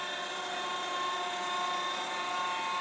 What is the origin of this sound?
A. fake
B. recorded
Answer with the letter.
B